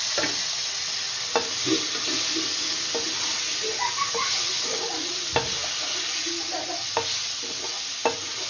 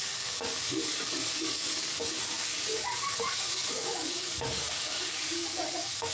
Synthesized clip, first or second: second